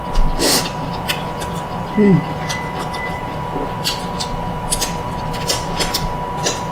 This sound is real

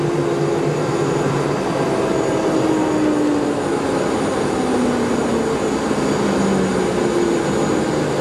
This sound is real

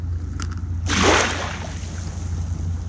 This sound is real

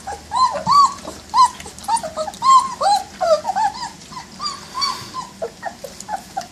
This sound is real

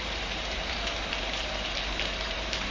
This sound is fake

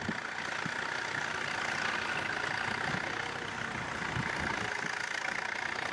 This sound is real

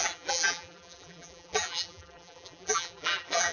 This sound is fake